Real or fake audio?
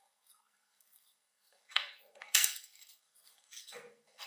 fake